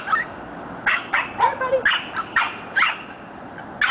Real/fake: real